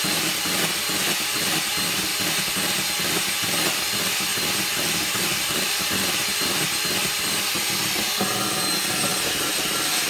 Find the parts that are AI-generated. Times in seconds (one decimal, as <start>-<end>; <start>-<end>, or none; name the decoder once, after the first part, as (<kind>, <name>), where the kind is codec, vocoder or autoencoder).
0.0-2.1 (vocoder, BigVGAN v2); 3.8-4.3; 5.2-10.1